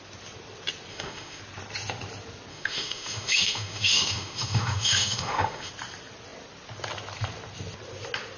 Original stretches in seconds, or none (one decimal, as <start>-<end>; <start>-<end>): 0.0-0.9; 1.4-2.5; 5.7-8.4